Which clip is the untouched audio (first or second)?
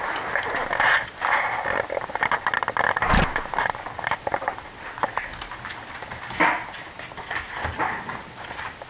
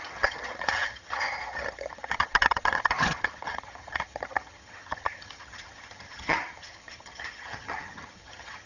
first